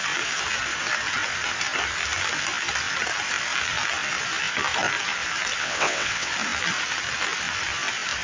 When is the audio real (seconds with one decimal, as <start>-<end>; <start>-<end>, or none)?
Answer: 0.0-5.6; 6.3-8.2